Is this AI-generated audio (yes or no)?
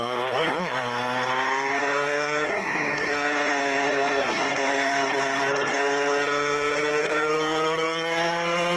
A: yes